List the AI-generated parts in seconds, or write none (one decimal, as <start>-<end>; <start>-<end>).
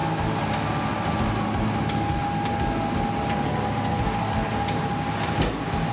none